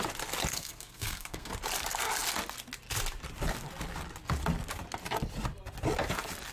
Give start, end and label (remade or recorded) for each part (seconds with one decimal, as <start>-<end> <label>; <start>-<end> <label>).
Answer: 0.0-0.5 recorded; 0.5-1.5 remade; 1.5-6.5 recorded